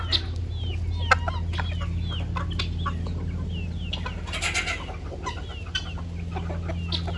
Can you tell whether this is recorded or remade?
recorded